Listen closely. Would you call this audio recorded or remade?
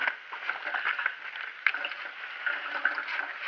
recorded